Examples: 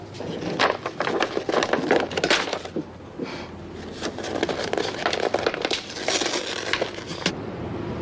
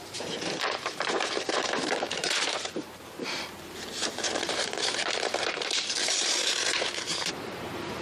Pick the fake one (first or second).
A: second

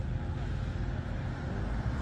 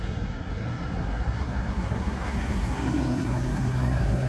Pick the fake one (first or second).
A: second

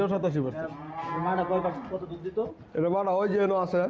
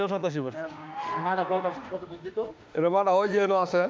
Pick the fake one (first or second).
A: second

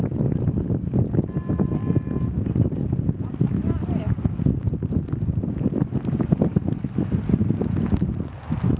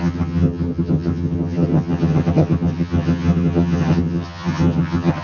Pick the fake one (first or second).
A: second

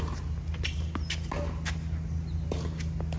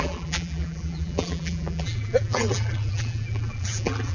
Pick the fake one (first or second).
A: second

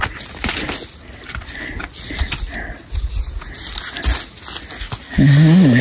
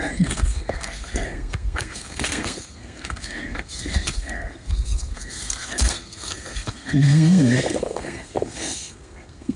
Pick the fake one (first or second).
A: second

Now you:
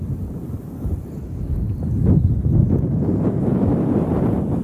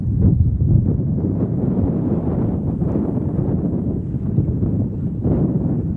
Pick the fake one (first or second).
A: second